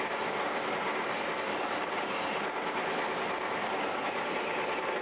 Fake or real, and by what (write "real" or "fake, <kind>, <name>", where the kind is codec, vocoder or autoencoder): real